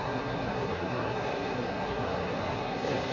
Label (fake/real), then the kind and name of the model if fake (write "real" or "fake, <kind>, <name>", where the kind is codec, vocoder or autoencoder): fake, codec, SNAC